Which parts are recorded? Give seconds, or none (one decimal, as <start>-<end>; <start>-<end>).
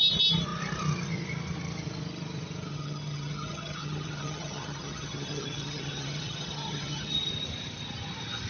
0.0-2.7; 7.3-8.5